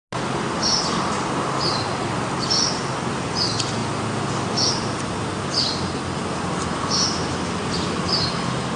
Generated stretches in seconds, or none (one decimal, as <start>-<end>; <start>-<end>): none